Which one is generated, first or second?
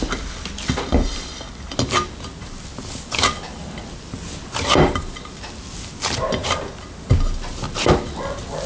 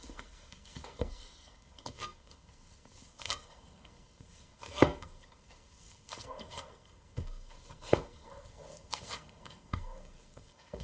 second